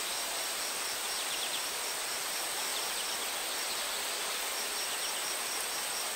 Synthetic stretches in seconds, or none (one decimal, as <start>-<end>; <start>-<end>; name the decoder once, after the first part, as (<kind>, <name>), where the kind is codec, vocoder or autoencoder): none